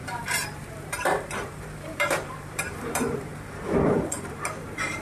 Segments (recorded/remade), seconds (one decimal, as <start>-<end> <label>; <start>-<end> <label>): 0.0-5.0 remade